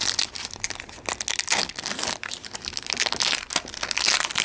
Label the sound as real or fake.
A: real